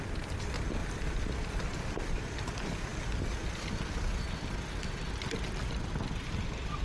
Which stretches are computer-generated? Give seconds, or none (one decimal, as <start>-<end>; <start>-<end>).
none